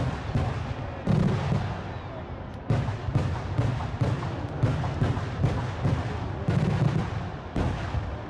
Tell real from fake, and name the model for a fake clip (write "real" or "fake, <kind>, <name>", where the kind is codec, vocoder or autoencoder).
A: real